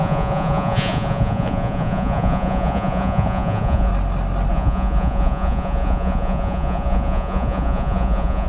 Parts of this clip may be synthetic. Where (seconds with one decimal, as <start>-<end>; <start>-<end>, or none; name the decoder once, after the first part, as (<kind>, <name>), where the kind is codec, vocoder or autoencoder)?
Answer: 0.0-3.9 (vocoder, Vocos); 4.5-8.5